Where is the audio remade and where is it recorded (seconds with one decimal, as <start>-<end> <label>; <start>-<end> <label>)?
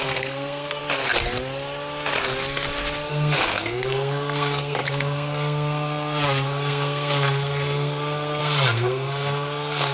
0.0-0.8 remade; 0.8-3.1 recorded; 3.1-9.9 remade